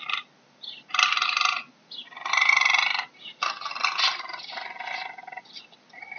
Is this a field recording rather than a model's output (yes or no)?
yes